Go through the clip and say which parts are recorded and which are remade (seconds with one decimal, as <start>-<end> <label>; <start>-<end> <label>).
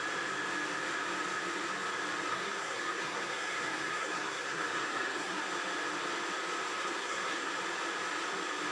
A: 0.0-2.3 recorded; 2.3-5.4 remade; 5.4-6.8 recorded; 6.8-7.5 remade; 7.5-8.7 recorded